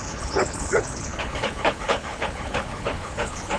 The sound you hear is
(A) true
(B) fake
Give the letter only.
B